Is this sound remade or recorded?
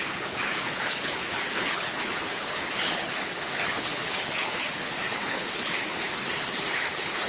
remade